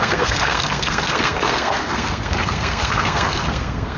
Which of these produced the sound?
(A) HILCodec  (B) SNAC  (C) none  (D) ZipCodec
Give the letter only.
B